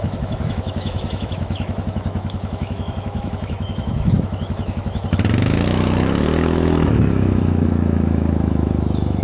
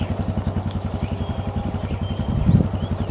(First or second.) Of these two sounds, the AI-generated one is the first